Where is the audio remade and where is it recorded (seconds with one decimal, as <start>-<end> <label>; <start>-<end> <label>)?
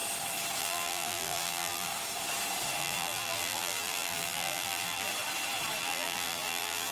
0.0-0.6 recorded; 0.6-1.9 remade; 1.9-2.8 recorded; 2.8-5.1 remade; 5.1-5.8 recorded; 5.8-6.9 remade